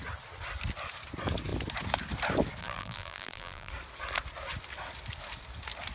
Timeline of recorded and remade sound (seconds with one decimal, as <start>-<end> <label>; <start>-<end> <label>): 0.0-2.6 recorded; 2.6-3.7 remade; 3.7-5.9 recorded